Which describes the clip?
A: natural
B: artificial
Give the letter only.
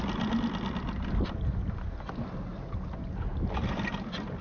A